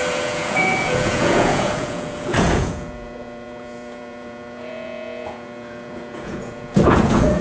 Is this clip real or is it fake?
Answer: fake